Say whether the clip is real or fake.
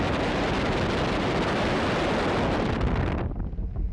real